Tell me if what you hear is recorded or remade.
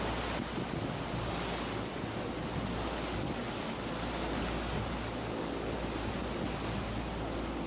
recorded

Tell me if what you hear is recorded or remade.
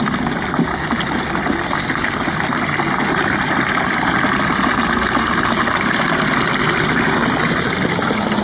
recorded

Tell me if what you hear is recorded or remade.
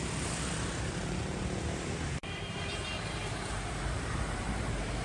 remade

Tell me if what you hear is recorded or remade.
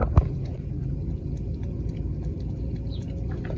recorded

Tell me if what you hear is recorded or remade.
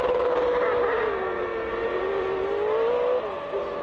recorded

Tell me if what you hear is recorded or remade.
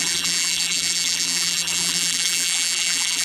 remade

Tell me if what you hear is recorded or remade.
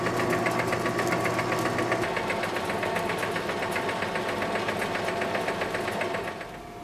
recorded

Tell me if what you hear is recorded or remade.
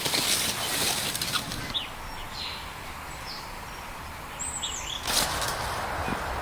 remade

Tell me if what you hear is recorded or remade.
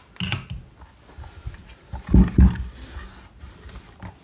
recorded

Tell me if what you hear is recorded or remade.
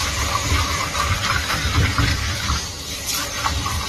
remade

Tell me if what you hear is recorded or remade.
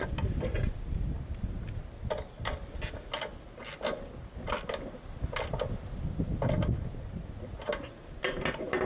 recorded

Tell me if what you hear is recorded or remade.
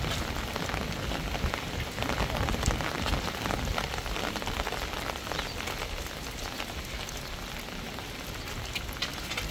recorded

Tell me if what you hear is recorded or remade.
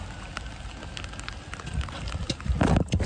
remade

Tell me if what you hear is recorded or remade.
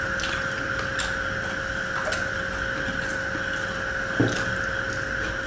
recorded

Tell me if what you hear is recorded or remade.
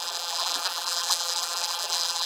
remade